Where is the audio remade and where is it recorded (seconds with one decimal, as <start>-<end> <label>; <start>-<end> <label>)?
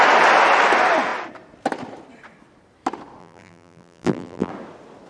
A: 0.0-3.2 recorded; 3.2-4.5 remade; 4.5-5.1 recorded